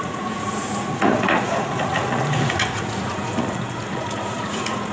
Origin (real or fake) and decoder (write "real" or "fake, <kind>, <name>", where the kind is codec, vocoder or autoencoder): fake, vocoder, Vocos